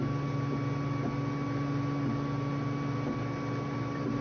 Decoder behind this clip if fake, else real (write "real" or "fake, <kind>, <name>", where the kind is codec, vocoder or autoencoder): real